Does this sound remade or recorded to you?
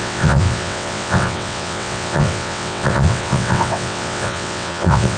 remade